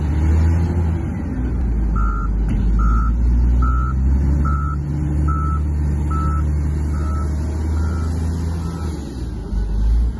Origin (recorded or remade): recorded